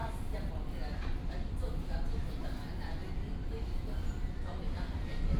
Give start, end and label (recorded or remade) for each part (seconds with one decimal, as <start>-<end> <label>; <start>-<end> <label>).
0.0-4.0 recorded; 4.0-4.6 remade; 4.6-5.4 recorded